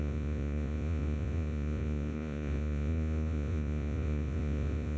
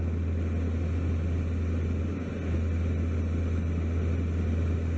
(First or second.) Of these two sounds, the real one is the second